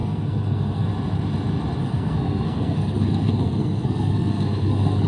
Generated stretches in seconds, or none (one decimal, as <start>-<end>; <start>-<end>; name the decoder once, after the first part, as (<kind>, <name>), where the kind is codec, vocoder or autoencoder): 0.0-0.9 (codec, SNAC); 1.8-5.1